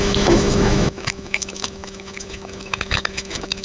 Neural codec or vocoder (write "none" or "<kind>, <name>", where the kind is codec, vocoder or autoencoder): autoencoder, DAC-VAE